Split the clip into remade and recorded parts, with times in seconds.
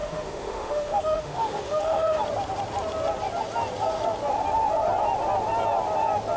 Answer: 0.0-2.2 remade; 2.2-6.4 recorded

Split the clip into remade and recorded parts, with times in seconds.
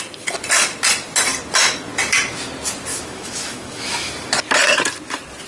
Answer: 0.0-2.9 recorded; 2.9-4.1 remade; 4.1-5.5 recorded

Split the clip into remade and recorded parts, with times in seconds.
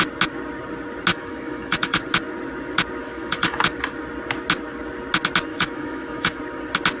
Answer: 0.0-1.1 recorded; 1.1-2.0 remade; 2.0-3.0 recorded; 3.0-3.6 remade; 3.6-5.5 recorded; 5.5-6.4 remade; 6.4-7.0 recorded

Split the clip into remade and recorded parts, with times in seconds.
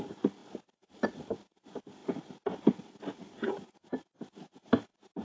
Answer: 0.0-5.2 recorded